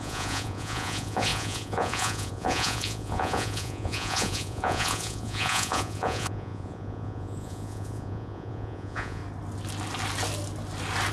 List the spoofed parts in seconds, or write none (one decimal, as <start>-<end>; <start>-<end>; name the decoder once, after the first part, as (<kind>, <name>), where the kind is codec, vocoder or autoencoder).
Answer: 0.0-9.2 (vocoder, Vocos)